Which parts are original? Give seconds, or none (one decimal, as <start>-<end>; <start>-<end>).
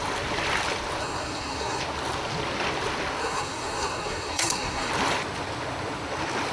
0.0-1.0; 1.8-3.2; 4.9-6.5